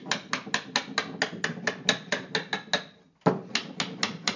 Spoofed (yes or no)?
no